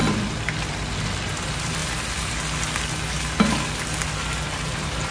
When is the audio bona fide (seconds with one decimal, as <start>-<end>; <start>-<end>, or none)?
0.0-5.1